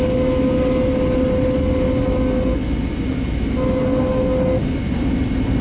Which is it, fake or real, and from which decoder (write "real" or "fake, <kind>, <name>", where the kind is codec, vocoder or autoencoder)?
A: real